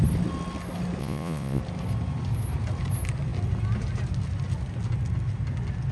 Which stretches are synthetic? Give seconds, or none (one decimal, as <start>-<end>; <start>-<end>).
1.0-1.6